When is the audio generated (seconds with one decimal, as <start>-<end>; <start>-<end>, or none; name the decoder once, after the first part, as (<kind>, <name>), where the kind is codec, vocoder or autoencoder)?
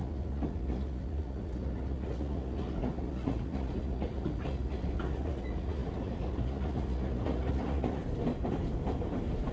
0.0-8.0 (vocoder, Vocos)